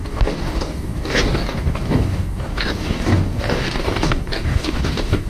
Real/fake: fake